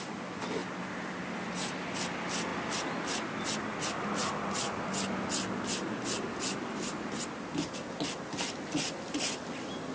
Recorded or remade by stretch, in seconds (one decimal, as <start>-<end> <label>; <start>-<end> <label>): 0.0-9.9 recorded